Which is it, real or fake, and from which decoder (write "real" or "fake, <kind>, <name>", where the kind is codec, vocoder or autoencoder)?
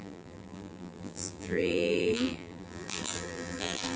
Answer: fake, vocoder, BigVGAN v2